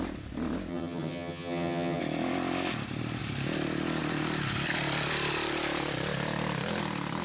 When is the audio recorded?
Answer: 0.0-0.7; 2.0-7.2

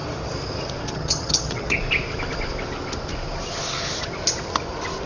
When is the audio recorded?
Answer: 0.0-0.9; 1.8-5.1